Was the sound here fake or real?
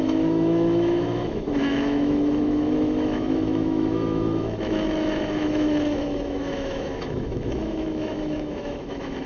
fake